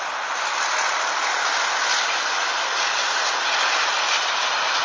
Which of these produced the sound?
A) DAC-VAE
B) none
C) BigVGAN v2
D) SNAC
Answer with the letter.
B